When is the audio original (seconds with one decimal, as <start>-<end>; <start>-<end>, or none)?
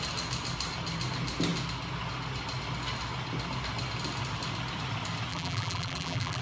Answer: 0.0-5.3